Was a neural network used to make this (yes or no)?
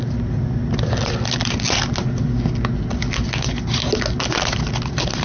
no